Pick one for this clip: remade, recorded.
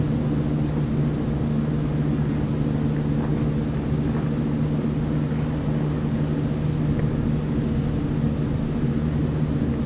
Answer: recorded